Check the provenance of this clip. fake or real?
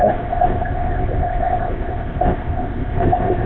fake